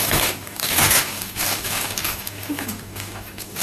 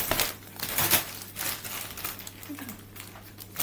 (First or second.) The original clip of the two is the second